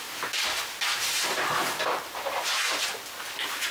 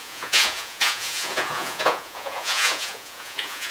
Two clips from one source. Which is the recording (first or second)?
first